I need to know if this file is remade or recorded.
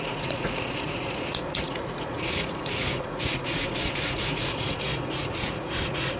remade